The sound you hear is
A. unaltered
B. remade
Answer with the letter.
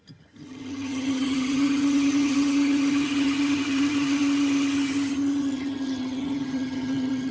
B